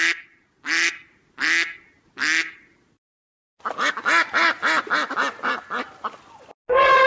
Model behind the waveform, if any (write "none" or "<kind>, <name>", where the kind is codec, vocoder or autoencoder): none